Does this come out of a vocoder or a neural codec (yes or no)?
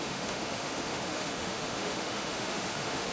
yes